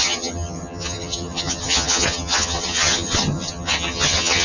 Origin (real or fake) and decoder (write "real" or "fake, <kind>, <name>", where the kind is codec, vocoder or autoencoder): fake, vocoder, HiFi-GAN